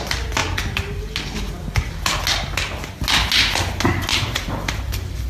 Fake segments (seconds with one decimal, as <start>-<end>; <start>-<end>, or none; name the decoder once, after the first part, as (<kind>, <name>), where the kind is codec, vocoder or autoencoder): 4.1-5.3 (vocoder, BigVGAN v2)